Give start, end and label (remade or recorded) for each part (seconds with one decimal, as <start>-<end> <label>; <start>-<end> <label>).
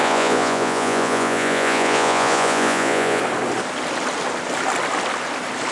0.0-3.2 remade; 3.2-5.7 recorded